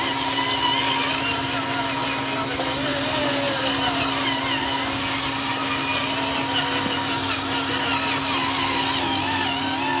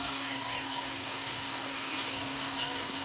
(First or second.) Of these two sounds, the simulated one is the second